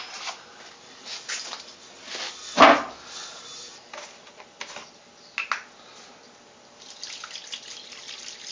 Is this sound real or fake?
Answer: real